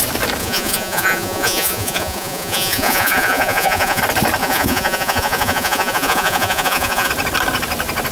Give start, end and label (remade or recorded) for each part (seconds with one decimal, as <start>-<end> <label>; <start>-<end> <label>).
0.0-0.4 recorded; 0.4-4.0 remade; 4.0-4.4 recorded; 4.4-7.1 remade; 7.1-8.1 recorded